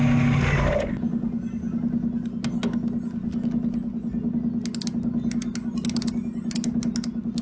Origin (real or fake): real